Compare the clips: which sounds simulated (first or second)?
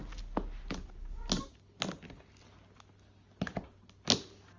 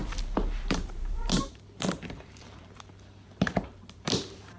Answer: second